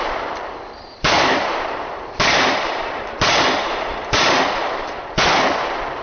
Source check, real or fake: fake